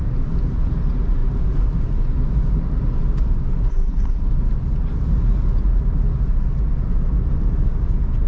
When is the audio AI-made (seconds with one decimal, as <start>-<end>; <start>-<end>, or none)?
3.7-4.2